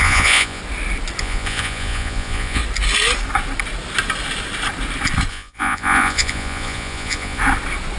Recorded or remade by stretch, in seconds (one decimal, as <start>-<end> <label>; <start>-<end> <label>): 0.0-0.6 remade; 0.6-1.2 recorded; 1.2-2.6 remade; 2.6-5.3 recorded; 5.3-7.4 remade; 7.4-8.0 recorded